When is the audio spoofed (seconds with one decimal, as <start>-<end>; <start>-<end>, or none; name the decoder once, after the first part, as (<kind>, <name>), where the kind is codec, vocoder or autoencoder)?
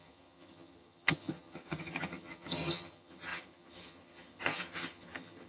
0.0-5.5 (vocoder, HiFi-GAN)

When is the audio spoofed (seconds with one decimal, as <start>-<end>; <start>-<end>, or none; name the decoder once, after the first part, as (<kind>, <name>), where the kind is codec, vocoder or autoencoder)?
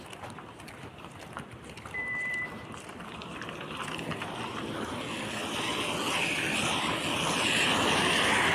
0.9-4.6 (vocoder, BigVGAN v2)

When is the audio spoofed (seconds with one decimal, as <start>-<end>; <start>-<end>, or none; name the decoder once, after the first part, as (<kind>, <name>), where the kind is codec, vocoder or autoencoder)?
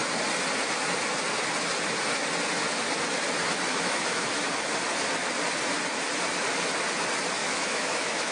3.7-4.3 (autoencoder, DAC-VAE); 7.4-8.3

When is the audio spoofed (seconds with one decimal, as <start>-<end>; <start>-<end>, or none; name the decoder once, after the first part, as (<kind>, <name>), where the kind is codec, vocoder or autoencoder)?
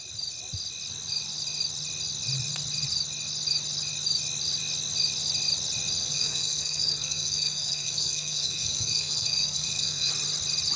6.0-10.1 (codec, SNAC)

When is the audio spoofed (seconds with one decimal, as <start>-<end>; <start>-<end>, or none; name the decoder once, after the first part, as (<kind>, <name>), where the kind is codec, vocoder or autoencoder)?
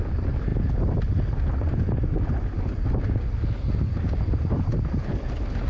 none